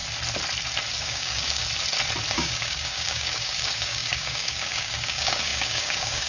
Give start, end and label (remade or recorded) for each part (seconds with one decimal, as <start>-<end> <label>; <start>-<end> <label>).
0.0-1.0 recorded; 1.0-1.6 remade; 1.6-2.3 recorded; 2.3-6.3 remade